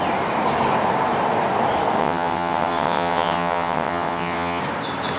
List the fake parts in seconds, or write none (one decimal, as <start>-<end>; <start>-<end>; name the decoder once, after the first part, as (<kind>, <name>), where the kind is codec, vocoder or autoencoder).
2.0-4.6 (vocoder, WaveNeXt)